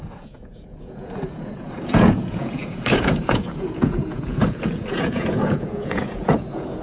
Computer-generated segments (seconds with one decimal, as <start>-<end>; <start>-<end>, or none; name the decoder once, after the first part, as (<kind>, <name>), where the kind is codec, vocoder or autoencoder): 0.0-6.8 (vocoder, Vocos)